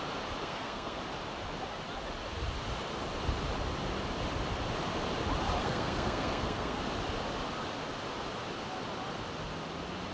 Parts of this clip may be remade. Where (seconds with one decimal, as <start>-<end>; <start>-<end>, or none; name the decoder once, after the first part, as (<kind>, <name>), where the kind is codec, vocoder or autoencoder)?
0.4-1.0 (codec, SNAC); 5.6-6.8